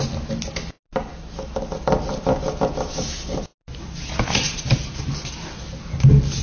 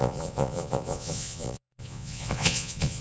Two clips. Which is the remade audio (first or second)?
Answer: second